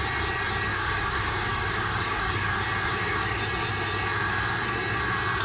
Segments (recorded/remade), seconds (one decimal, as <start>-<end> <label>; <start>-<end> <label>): 0.0-0.7 recorded; 0.7-2.5 remade; 2.5-2.9 recorded; 2.9-3.4 remade; 3.4-5.4 recorded